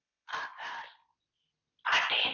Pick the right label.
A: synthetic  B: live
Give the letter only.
B